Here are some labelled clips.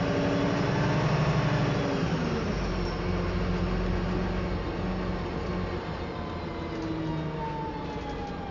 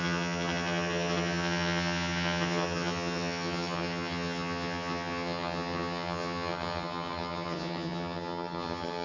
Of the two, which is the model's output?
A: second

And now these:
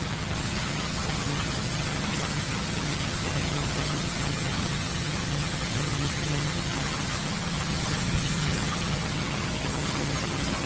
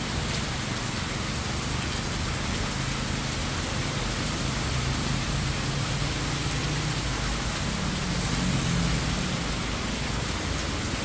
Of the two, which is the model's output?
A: first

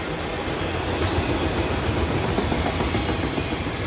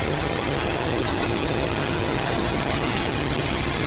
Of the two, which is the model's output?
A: second